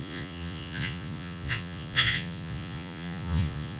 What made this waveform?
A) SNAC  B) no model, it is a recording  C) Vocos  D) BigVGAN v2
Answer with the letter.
C